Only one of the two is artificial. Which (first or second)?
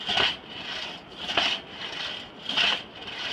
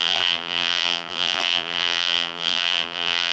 second